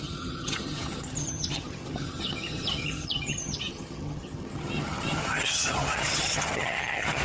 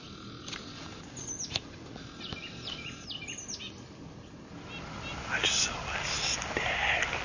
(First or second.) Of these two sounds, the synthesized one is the first